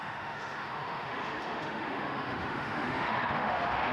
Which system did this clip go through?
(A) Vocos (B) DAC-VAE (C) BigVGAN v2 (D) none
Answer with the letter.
B